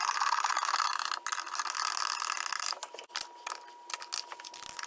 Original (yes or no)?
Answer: yes